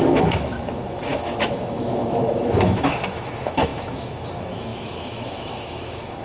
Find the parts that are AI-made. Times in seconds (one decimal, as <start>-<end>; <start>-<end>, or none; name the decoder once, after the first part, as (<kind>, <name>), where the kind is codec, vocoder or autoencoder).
0.0-6.2 (autoencoder, DAC-VAE)